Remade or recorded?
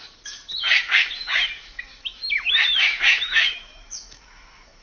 remade